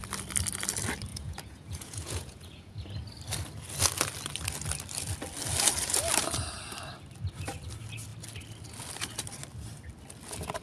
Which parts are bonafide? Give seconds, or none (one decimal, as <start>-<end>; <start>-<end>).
0.0-1.1; 2.9-10.6